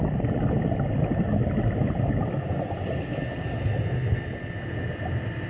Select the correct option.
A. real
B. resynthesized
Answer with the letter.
A